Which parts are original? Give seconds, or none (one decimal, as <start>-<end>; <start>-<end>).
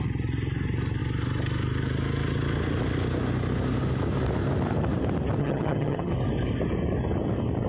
0.0-5.4; 6.1-7.7